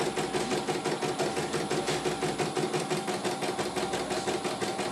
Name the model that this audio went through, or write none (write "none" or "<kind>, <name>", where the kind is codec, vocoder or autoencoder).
none